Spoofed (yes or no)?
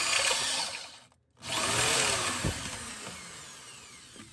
no